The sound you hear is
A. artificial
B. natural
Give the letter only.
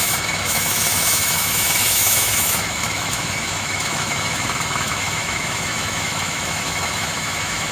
A